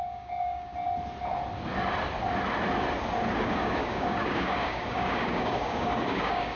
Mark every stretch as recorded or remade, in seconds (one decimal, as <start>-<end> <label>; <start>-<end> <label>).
0.0-0.7 remade; 0.7-3.3 recorded; 3.3-6.6 remade